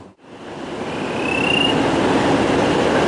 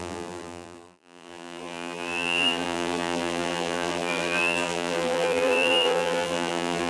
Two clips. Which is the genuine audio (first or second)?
first